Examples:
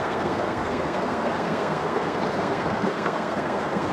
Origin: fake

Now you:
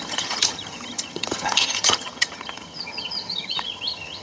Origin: fake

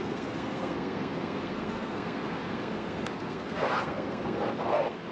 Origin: fake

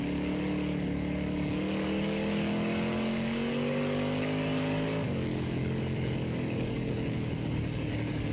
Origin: fake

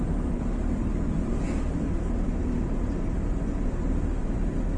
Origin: fake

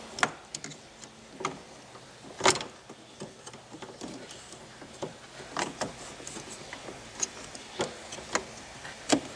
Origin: real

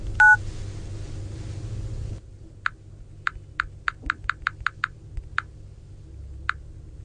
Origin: real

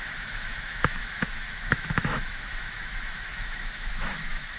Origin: fake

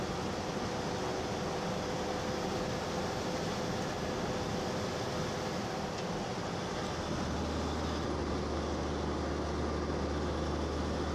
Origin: real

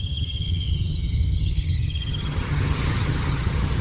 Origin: fake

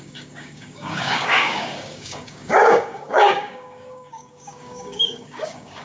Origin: fake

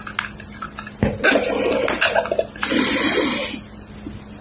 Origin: real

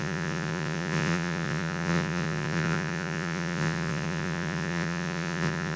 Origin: fake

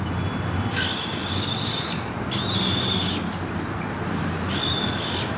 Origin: real